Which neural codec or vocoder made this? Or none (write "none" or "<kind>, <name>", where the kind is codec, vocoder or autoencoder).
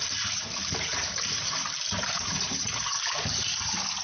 vocoder, BigVGAN v2